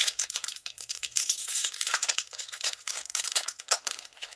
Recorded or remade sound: remade